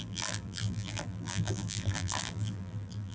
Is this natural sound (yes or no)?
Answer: no